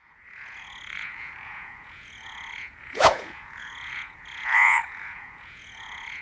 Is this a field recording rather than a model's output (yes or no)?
no